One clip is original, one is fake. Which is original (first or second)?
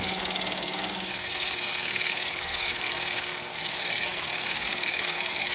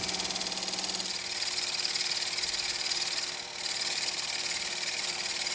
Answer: second